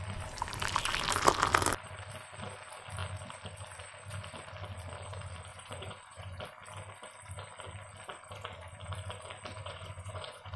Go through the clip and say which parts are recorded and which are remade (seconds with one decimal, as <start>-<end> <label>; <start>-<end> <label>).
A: 0.0-5.5 recorded; 5.5-6.4 remade; 6.4-9.6 recorded; 9.6-10.6 remade